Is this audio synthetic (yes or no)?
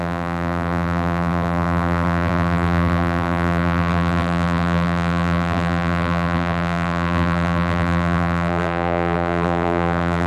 yes